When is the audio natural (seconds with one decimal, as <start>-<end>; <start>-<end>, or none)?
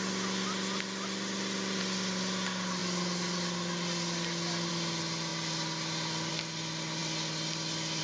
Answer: 0.0-8.0